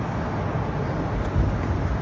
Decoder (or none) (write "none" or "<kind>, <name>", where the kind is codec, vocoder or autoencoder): none